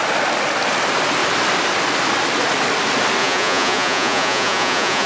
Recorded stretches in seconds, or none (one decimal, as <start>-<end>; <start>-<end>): 0.0-3.2